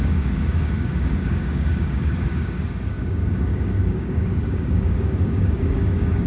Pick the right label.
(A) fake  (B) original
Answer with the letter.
A